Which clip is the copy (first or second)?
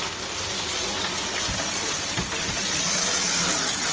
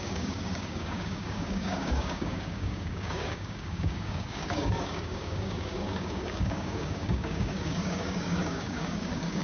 second